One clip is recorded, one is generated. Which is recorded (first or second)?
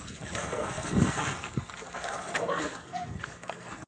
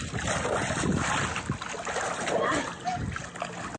second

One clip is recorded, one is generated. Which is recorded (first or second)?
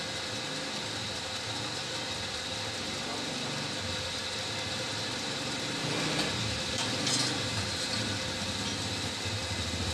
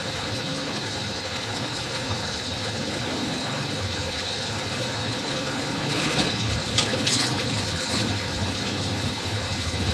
first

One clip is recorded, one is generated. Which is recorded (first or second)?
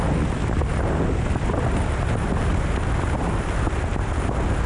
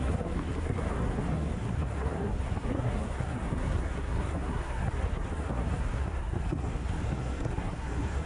first